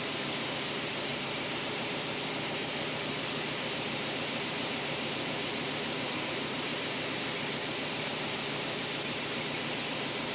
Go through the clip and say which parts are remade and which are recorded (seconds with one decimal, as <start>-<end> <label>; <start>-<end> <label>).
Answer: 0.0-10.3 remade